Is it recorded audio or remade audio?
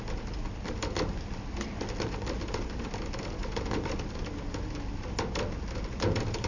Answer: recorded